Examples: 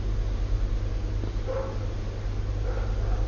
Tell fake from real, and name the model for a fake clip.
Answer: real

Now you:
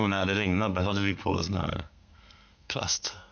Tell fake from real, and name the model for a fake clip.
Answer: fake, codec, SNAC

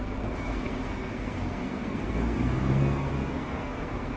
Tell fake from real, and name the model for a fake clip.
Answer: fake, codec, SNAC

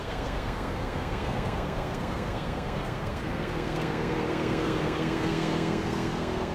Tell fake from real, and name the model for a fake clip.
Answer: fake, codec, SNAC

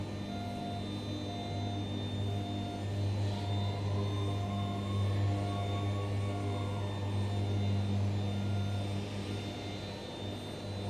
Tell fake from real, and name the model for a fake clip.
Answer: real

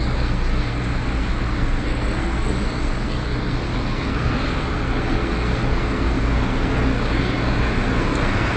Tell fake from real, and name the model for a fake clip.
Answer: fake, codec, SNAC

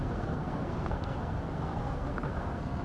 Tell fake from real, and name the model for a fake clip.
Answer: fake, codec, SNAC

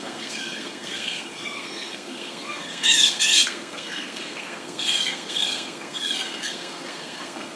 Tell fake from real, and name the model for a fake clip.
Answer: fake, codec, SNAC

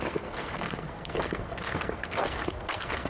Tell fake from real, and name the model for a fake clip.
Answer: fake, codec, SNAC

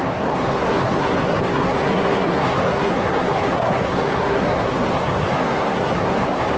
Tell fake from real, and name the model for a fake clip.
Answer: fake, codec, SNAC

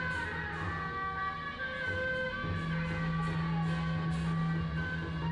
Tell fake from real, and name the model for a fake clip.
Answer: real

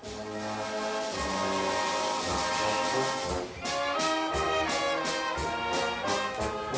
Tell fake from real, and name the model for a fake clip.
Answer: real